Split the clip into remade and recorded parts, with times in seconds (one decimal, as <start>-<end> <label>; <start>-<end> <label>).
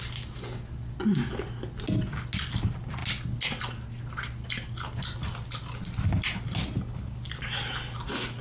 0.0-8.4 recorded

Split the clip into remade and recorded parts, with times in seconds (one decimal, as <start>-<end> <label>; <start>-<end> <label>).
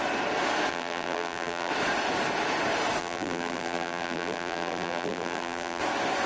0.0-0.7 recorded; 0.7-1.7 remade; 1.7-3.0 recorded; 3.0-5.8 remade; 5.8-6.3 recorded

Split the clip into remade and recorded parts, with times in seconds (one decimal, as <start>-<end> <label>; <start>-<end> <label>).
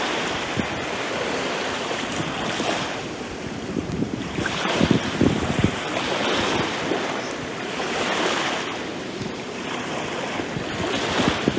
0.0-3.8 recorded; 3.8-5.7 remade; 5.7-8.9 recorded; 8.9-10.0 remade; 10.0-11.6 recorded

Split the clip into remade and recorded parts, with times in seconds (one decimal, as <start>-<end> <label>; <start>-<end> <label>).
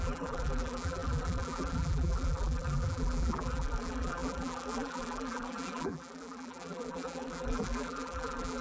0.0-8.6 remade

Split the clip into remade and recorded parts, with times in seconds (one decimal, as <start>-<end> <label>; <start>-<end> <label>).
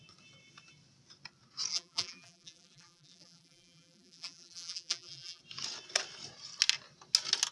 0.0-1.7 recorded; 1.7-5.4 remade; 5.4-7.5 recorded